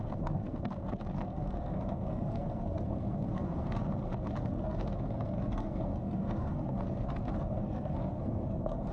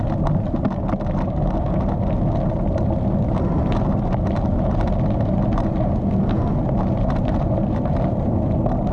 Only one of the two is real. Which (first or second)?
second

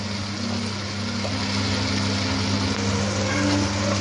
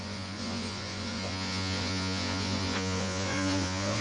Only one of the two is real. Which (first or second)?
first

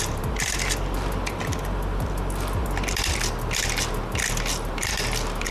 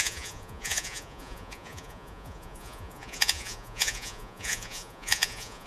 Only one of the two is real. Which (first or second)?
first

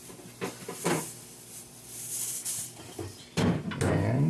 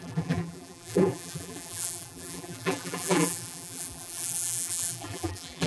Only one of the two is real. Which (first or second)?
first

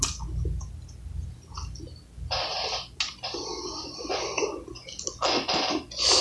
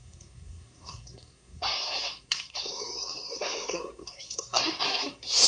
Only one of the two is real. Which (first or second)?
first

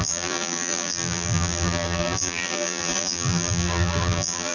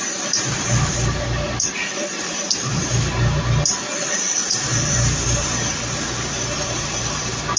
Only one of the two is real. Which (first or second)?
second